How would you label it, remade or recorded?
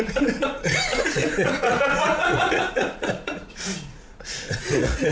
remade